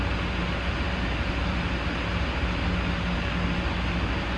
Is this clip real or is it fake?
real